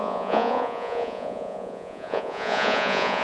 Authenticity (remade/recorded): remade